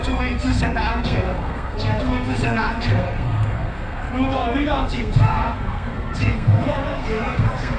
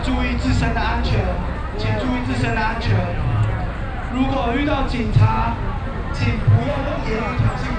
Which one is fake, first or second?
first